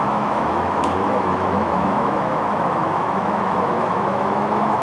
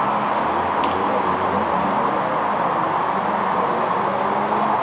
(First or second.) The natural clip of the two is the second